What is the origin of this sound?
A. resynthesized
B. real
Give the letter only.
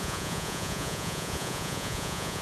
A